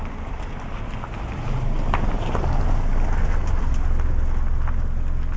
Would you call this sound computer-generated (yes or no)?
no